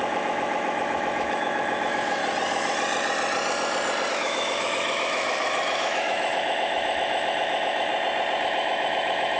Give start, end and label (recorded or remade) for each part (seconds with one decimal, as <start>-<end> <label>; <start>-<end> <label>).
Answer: 0.0-2.2 remade; 2.2-4.1 recorded; 4.1-7.9 remade; 7.9-8.4 recorded; 8.4-9.4 remade